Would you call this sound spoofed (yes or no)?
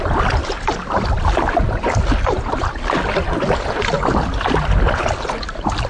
no